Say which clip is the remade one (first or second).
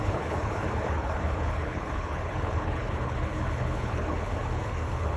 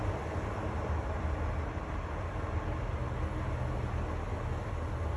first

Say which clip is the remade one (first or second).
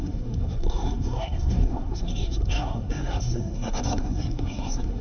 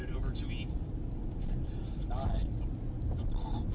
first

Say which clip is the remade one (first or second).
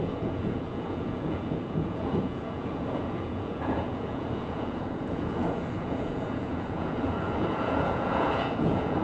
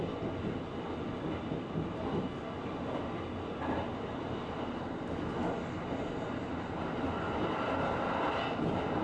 first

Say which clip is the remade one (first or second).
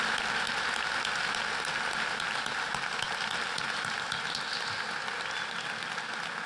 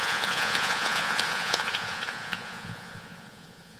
second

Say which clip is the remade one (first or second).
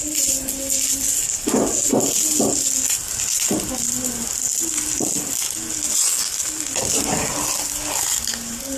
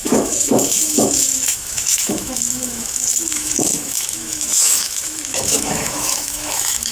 second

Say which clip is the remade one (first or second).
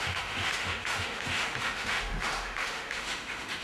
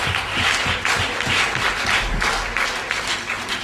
first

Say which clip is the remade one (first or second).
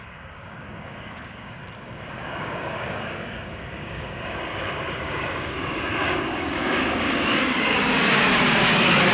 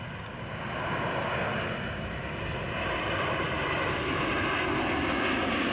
first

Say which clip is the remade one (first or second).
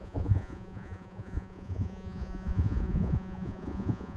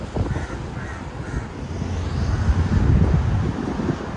first